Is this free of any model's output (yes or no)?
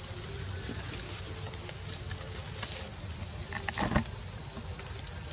yes